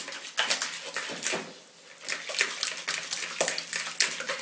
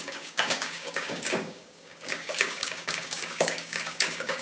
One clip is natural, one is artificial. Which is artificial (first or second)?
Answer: second